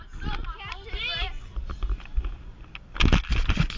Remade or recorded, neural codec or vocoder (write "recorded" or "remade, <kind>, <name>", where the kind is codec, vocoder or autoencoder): recorded